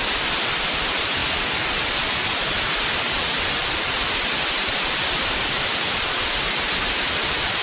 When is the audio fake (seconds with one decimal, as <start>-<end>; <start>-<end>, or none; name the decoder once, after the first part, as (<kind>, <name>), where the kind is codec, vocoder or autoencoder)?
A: none